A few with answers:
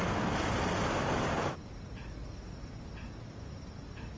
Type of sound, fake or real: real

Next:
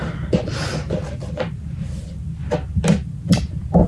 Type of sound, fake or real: real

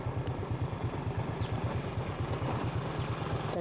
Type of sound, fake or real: real